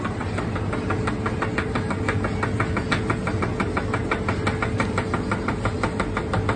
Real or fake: real